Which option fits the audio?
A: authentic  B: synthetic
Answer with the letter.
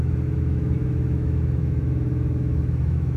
B